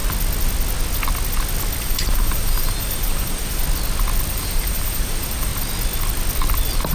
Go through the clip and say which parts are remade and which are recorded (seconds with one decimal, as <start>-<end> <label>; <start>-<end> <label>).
0.0-1.8 recorded; 1.8-3.6 remade; 3.6-4.3 recorded; 4.3-5.5 remade; 5.5-6.9 recorded